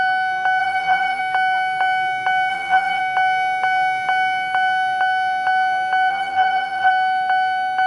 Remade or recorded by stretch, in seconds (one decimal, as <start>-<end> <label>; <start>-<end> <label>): 0.0-0.6 recorded; 0.6-1.2 remade; 1.2-2.5 recorded; 2.5-3.0 remade; 3.0-6.1 recorded; 6.1-6.9 remade; 6.9-7.9 recorded